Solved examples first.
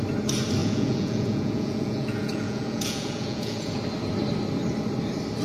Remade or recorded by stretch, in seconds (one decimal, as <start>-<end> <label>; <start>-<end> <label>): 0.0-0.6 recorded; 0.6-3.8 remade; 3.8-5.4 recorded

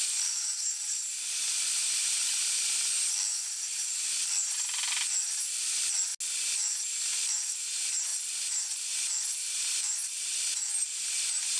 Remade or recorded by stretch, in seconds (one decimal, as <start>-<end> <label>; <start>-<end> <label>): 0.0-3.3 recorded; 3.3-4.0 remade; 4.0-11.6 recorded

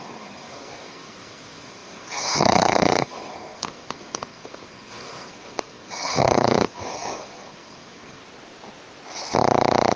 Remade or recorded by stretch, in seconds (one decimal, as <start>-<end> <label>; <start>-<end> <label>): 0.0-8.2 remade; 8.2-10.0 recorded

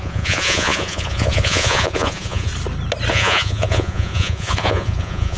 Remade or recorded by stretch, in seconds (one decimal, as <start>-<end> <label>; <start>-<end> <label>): 0.0-2.5 remade; 2.5-3.1 recorded; 3.1-5.4 remade